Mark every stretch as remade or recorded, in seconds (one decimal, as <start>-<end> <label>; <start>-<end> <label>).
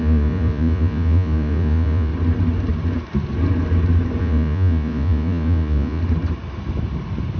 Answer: 0.0-2.1 remade; 2.1-4.2 recorded; 4.2-6.0 remade; 6.0-7.4 recorded